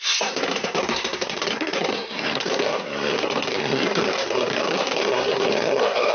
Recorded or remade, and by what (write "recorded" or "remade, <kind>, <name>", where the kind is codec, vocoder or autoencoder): remade, codec, SNAC